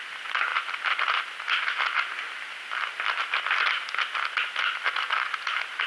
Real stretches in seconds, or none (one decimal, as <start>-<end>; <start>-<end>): 0.0-0.5; 1.2-5.9